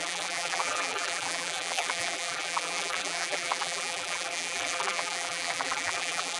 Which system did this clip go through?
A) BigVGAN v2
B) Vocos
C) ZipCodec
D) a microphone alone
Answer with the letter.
A